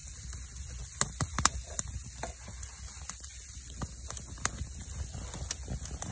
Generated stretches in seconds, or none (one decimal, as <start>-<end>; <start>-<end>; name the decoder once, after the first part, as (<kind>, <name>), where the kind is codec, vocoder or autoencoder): none